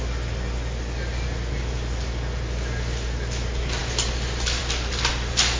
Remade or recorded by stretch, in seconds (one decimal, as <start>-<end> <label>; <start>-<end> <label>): 0.0-5.6 recorded